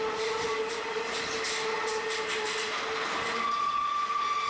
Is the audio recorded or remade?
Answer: recorded